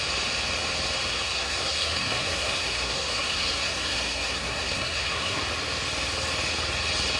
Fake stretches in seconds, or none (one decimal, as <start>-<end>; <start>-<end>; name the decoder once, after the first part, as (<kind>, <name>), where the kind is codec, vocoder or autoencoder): 1.1-5.4 (codec, SNAC)